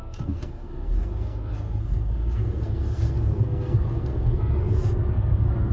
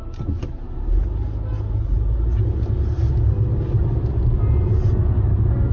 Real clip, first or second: second